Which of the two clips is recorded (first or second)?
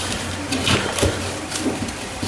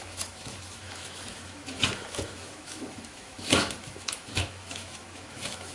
first